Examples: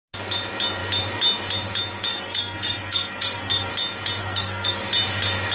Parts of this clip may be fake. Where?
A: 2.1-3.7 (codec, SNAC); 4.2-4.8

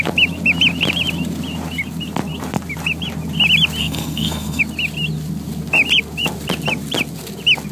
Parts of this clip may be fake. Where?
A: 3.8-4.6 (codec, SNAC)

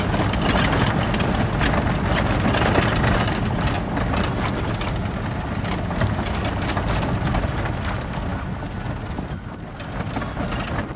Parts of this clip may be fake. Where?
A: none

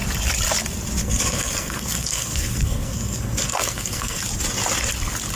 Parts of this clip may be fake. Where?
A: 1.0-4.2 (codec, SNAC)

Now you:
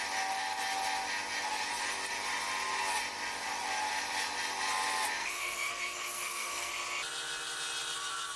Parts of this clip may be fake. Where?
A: 5.2-6.7 (codec, SNAC)

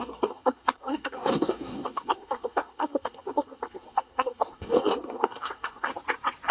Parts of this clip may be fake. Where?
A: 0.0-5.9 (codec, SNAC)

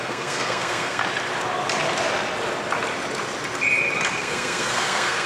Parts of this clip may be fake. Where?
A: 0.0-1.0 (codec, SNAC); 4.2-5.3

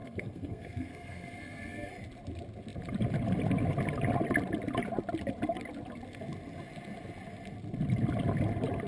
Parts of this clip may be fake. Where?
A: 0.0-1.9 (codec, SNAC)